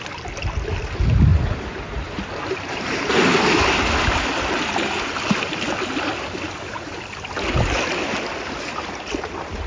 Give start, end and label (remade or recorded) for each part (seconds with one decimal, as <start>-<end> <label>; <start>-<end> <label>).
0.0-1.3 recorded; 1.3-3.1 remade; 3.1-9.7 recorded